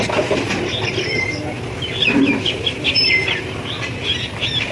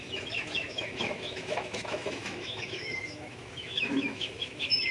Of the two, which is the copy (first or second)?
second